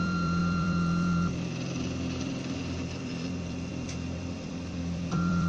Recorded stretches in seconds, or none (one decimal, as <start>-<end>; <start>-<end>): none